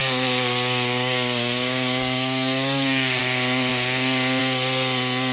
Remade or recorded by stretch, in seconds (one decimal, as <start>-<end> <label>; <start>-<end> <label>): 0.0-3.2 remade; 3.2-5.3 recorded